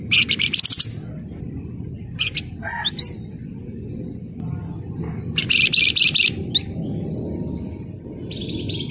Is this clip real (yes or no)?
yes